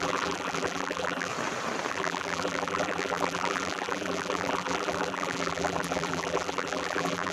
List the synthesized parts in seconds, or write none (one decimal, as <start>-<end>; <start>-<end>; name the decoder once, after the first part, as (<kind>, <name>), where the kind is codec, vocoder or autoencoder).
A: 0.0-1.3 (vocoder, BigVGAN v2); 1.9-7.3